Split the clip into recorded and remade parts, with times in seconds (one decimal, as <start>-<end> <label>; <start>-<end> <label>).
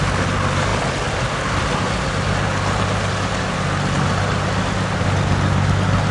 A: 0.0-6.1 recorded